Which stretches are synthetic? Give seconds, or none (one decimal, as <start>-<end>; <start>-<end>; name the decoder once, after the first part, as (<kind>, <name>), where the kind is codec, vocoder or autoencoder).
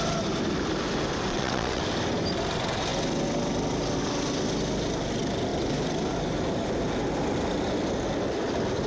1.3-1.8 (vocoder, WaveNeXt)